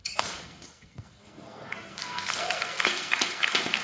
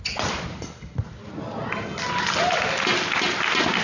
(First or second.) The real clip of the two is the second